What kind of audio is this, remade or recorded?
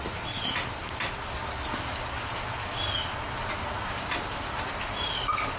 recorded